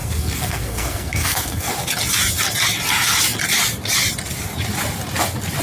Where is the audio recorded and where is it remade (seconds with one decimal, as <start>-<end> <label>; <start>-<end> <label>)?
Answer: 0.0-1.7 remade; 1.7-5.6 recorded